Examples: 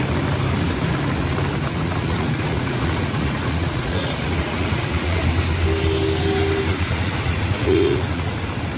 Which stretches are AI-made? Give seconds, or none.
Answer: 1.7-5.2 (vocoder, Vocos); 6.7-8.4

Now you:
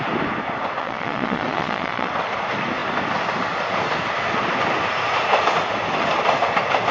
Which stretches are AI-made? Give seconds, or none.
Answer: 0.8-2.1 (vocoder, Vocos)

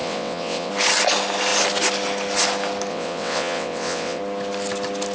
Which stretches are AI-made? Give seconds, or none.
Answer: 0.0-0.7 (vocoder, WaveNeXt); 2.9-4.2

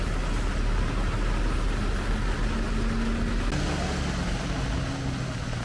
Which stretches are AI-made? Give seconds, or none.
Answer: none

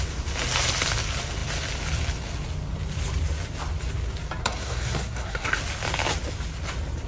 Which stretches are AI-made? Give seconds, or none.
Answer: 4.4-5.6 (codec, SNAC)

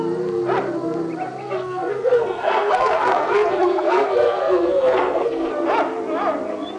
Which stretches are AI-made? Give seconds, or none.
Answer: 1.4-5.5 (codec, SNAC)

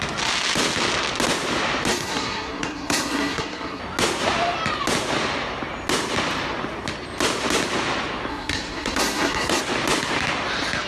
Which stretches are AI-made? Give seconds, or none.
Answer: 1.9-3.8 (codec, SNAC); 8.3-9.6